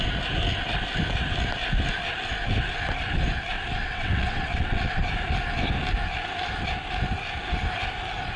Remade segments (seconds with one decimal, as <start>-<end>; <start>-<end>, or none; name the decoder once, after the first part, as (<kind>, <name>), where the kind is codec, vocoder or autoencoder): 3.8-5.1 (vocoder, WaveNeXt)